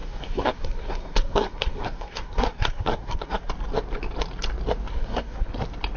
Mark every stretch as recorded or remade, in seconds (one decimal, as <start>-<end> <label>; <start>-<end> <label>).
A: 0.0-3.5 remade; 3.5-4.9 recorded; 4.9-5.5 remade; 5.5-6.0 recorded